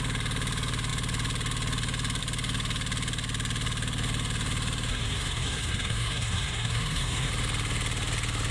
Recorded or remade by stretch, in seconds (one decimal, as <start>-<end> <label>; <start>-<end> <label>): 0.0-4.9 recorded; 4.9-7.3 remade; 7.3-8.5 recorded